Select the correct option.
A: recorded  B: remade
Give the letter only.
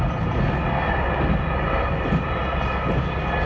A